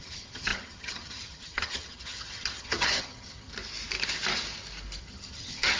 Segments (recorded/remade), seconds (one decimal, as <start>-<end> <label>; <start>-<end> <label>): 0.0-3.5 remade; 3.5-5.0 recorded; 5.0-5.8 remade